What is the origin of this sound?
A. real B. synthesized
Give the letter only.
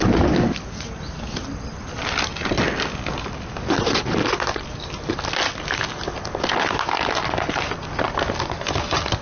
A